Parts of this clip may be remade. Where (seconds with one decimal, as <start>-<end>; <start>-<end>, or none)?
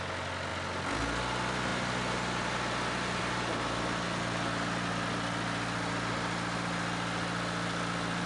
none